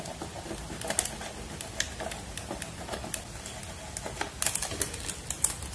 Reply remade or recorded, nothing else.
recorded